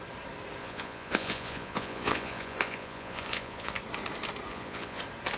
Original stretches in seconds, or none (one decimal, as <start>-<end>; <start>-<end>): 0.0-0.6; 3.8-4.5; 5.0-5.4